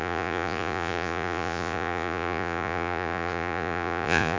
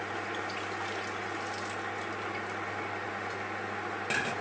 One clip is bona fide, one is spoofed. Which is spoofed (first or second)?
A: first